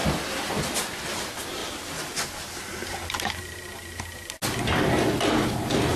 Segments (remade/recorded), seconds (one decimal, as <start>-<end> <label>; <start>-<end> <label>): 0.0-6.0 recorded